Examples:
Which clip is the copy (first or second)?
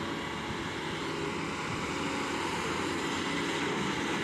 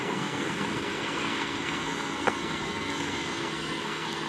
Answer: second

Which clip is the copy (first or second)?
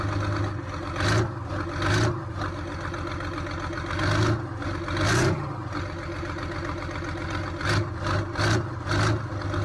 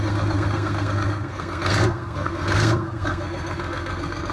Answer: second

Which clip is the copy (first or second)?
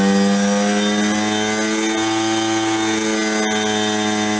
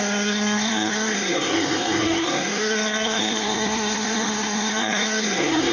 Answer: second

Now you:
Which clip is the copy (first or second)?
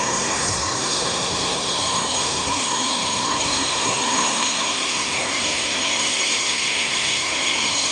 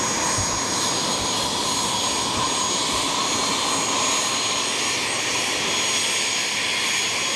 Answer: first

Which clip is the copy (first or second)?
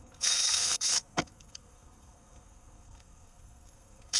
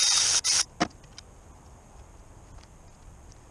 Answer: first